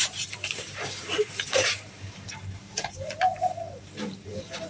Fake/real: fake